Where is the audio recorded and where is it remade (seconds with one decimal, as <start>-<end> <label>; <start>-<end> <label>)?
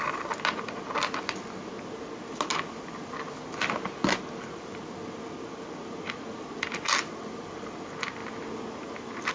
0.0-9.3 recorded